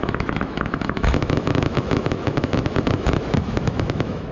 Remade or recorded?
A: remade